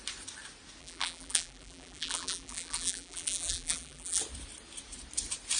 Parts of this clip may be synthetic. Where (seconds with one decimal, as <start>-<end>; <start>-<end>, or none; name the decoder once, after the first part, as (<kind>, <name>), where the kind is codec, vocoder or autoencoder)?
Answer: 0.8-4.2 (vocoder, BigVGAN v2)